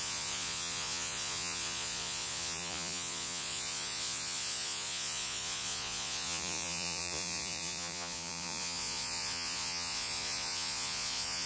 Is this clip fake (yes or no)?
yes